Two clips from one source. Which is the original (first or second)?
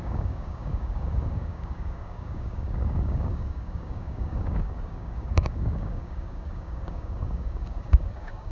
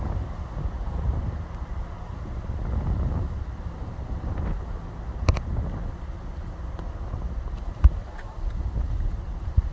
second